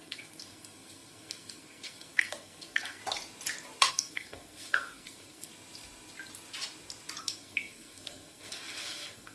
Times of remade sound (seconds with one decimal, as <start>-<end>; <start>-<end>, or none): 0.0-3.0; 3.9-5.5; 7.2-9.3